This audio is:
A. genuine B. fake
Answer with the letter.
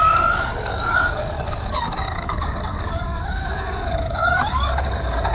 B